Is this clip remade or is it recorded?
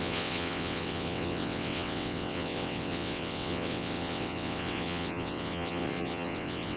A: remade